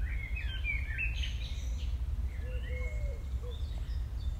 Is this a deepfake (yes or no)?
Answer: no